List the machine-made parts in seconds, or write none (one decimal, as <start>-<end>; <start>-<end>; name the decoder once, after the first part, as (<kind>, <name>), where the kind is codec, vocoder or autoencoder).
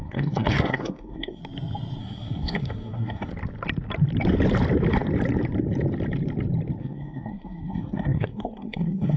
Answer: 0.0-1.4 (codec, SNAC); 2.0-3.3; 6.8-9.2